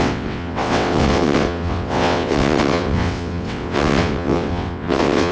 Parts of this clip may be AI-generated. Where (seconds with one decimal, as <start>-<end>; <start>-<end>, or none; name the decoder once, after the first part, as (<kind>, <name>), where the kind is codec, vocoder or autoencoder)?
0.0-5.3 (vocoder, WaveNeXt)